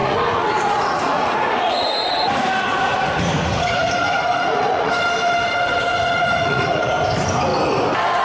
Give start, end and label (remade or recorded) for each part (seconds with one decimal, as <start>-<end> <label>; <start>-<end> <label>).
0.0-4.9 remade; 4.9-5.9 recorded; 5.9-6.9 remade; 6.9-8.2 recorded